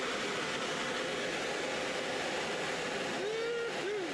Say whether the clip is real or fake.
real